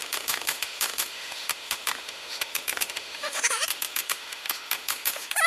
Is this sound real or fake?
fake